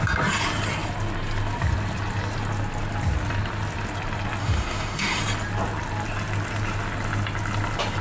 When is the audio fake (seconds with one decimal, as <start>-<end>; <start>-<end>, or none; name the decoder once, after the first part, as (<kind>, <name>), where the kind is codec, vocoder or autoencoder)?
4.4-5.2 (autoencoder, DAC-VAE)